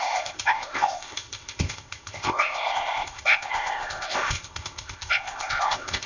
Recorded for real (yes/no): no